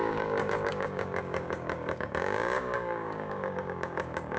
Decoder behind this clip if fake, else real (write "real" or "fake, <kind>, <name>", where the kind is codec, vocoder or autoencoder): fake, codec, DAC